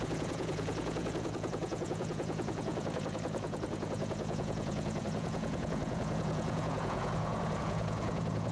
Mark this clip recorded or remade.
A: remade